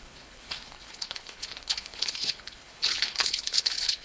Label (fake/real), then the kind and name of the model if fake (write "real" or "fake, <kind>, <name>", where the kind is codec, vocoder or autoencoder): fake, codec, HILCodec